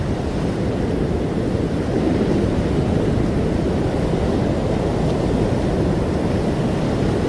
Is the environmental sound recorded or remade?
recorded